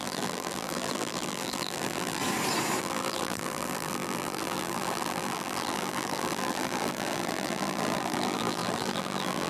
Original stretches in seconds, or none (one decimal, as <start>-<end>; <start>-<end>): 2.2-2.8